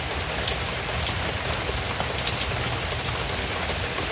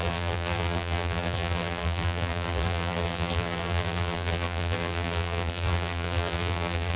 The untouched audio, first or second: first